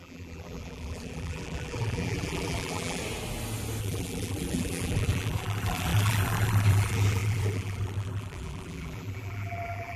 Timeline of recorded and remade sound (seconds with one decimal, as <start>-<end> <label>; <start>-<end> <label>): 0.0-3.0 remade; 3.0-3.8 recorded; 3.8-10.0 remade